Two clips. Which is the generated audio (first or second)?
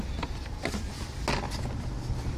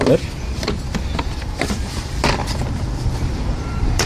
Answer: second